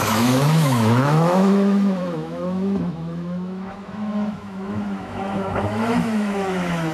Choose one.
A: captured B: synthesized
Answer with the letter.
B